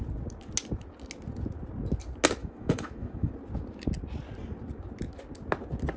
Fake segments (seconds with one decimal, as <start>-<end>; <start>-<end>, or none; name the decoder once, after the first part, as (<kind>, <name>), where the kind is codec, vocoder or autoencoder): 2.4-3.3 (autoencoder, DAC-VAE)